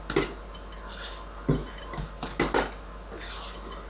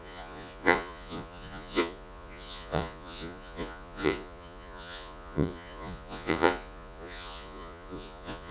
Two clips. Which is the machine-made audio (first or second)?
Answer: second